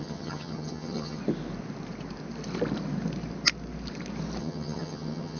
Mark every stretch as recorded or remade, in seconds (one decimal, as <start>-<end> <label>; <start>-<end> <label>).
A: 0.0-1.2 remade; 1.2-4.4 recorded; 4.4-5.4 remade